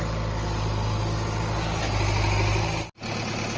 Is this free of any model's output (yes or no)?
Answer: yes